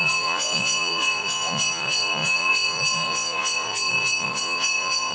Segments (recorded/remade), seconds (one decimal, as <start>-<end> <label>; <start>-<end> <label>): 0.0-5.1 remade